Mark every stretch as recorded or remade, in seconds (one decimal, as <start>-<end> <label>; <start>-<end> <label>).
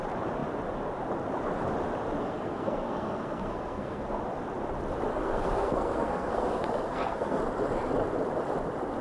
0.0-2.2 recorded; 2.2-4.2 remade; 4.2-5.1 recorded; 5.1-7.4 remade; 7.4-9.0 recorded